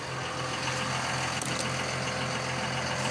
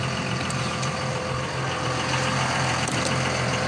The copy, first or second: second